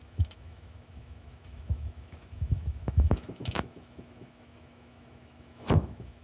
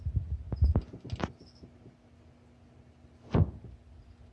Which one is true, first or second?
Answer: second